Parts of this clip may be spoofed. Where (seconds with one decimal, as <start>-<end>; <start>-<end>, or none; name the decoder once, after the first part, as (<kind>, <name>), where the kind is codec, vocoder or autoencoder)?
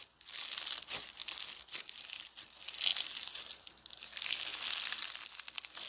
1.2-2.1 (vocoder, BigVGAN v2); 2.9-3.7; 4.5-5.3